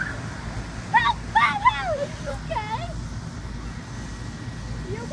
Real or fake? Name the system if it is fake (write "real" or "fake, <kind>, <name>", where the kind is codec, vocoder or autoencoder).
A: real